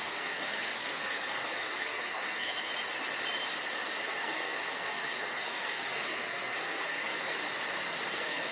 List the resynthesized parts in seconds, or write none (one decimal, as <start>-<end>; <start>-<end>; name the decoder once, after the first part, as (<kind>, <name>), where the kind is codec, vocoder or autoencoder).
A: 0.0-2.7 (codec, SNAC); 4.0-7.4; 8.1-8.5

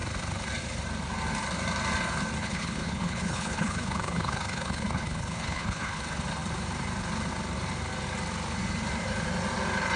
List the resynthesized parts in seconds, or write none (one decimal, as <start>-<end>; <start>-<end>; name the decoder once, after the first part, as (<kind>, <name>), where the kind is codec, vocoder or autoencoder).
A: 2.4-6.0 (codec, HILCodec)

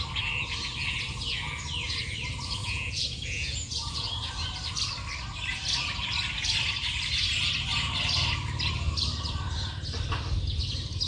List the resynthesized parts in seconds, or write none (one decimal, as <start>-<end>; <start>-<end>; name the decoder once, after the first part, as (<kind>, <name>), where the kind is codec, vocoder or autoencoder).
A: 2.6-4.3 (vocoder, Vocos)

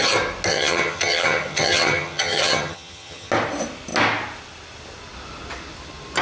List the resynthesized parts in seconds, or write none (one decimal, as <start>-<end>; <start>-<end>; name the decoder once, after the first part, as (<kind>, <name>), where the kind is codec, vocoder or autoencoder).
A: 0.5-3.3 (vocoder, HiFi-GAN)

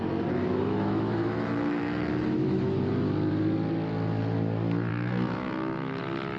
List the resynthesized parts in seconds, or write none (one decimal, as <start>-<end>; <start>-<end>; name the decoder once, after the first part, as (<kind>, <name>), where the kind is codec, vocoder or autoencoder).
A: 0.4-2.9 (autoencoder, DAC-VAE); 4.9-6.0

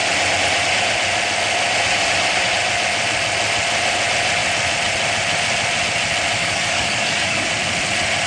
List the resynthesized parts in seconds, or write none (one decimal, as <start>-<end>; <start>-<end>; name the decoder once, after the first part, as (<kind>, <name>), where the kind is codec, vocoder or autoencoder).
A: 6.4-7.5 (codec, DAC)

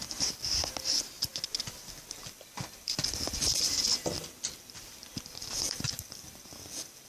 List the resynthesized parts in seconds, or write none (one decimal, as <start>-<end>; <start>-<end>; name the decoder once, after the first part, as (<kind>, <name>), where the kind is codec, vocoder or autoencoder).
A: 0.0-1.3 (vocoder, BigVGAN v2); 2.1-7.1